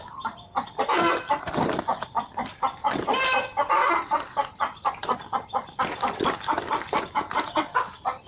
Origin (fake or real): real